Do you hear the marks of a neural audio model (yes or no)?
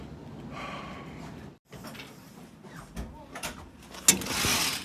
no